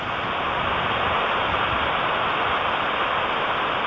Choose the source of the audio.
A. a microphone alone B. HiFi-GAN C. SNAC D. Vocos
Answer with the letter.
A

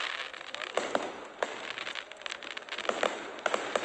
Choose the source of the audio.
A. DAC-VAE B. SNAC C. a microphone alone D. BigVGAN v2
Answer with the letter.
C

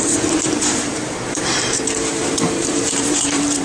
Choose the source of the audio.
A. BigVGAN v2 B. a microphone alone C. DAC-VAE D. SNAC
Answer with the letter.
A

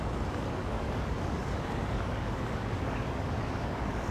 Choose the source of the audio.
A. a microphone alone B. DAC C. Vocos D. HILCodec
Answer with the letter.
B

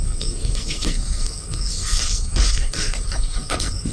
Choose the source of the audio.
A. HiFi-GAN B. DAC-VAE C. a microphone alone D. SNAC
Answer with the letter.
D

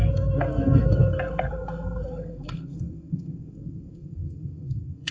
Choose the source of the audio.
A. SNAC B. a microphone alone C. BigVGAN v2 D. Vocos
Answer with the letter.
A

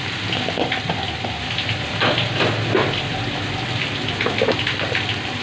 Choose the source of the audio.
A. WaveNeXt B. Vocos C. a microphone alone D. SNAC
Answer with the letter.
C